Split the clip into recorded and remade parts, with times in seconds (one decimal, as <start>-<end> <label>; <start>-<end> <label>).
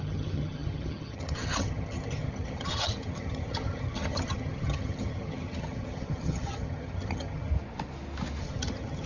0.0-7.5 remade; 7.5-8.4 recorded; 8.4-9.1 remade